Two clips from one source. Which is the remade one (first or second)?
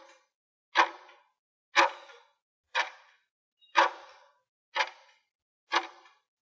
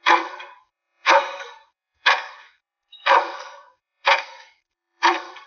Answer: second